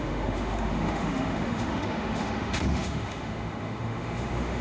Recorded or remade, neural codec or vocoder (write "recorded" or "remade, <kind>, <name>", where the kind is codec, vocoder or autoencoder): remade, autoencoder, DAC-VAE